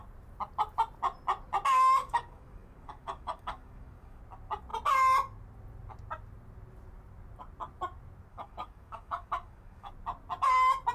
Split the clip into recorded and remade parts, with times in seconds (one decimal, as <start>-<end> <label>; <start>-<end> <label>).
0.0-1.7 recorded; 1.7-4.2 remade; 4.2-8.3 recorded; 8.3-9.9 remade; 9.9-10.9 recorded

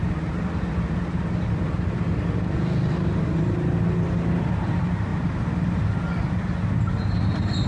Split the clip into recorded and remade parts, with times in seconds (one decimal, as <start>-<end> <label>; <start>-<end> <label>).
0.0-7.7 recorded